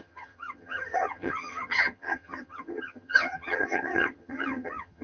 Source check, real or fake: fake